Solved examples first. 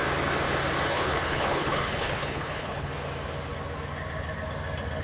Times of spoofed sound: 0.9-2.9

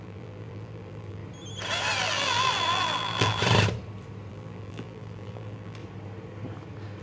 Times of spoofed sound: 0.0-1.2; 2.0-3.4; 4.3-5.8

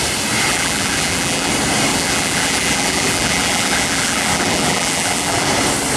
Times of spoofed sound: 0.5-1.5; 1.9-5.5

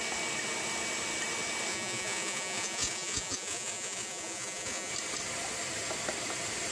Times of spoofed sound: 1.7-4.9

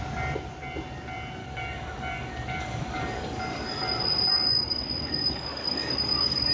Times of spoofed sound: 1.4-3.4; 4.3-6.5

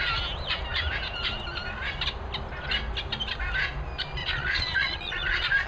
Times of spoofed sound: 4.2-5.7

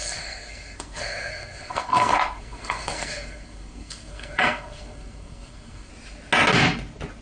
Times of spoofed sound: 0.0-5.9